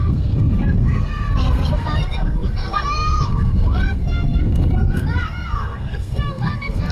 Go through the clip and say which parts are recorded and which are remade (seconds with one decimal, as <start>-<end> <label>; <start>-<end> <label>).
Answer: 0.0-6.9 remade